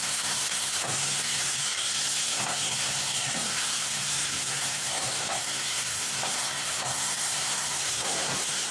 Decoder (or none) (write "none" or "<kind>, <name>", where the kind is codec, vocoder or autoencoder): codec, SNAC